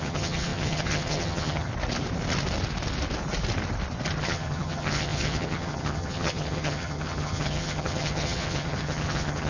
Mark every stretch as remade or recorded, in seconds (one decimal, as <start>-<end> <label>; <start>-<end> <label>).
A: 0.0-1.7 remade; 1.7-4.2 recorded; 4.2-9.5 remade